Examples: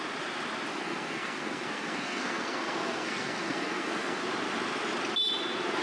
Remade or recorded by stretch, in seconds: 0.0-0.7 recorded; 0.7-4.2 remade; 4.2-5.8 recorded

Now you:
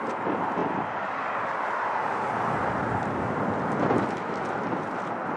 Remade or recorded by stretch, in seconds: 0.0-5.4 recorded

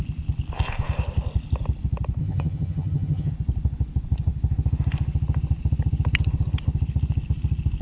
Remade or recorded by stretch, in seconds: 0.0-2.2 recorded; 2.2-3.3 remade; 3.3-7.8 recorded

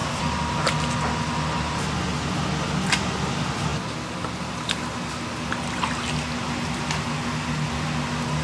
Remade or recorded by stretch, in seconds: 0.0-8.4 recorded

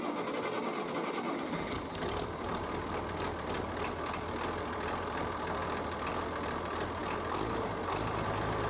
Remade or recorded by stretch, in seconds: 0.0-8.7 recorded

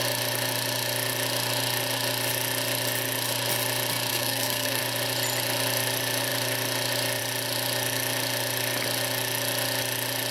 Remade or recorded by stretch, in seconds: 0.0-4.1 recorded; 4.1-4.8 remade; 4.8-10.3 recorded

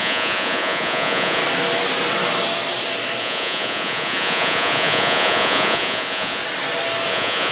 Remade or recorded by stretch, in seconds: 0.0-1.4 remade; 1.4-3.2 recorded; 3.2-6.4 remade; 6.4-7.1 recorded; 7.1-7.5 remade

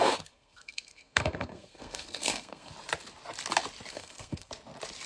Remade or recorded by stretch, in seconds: 0.0-2.7 remade; 2.7-3.9 recorded; 3.9-4.5 remade; 4.5-5.1 recorded